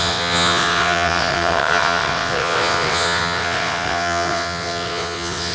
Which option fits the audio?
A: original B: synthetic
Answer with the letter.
B